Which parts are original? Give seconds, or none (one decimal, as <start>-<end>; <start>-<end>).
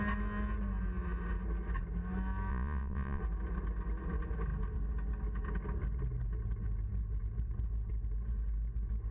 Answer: 0.0-2.5; 3.2-9.1